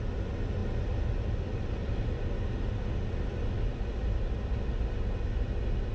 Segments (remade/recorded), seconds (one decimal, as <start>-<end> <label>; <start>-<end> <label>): 0.0-5.9 recorded